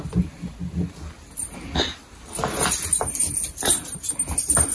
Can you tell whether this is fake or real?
real